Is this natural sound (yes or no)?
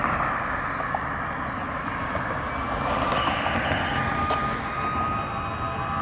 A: yes